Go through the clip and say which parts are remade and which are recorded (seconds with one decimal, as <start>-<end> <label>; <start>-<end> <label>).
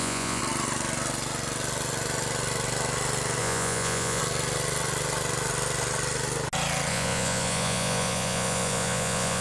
0.0-0.4 remade; 0.4-3.4 recorded; 3.4-4.2 remade; 4.2-6.9 recorded; 6.9-9.4 remade